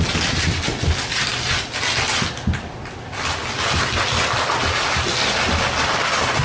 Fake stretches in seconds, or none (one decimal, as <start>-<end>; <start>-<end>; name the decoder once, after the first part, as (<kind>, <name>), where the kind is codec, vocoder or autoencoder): none